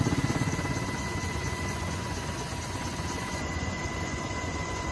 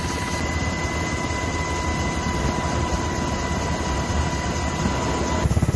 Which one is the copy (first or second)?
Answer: first